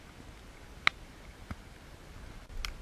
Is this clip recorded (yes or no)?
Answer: yes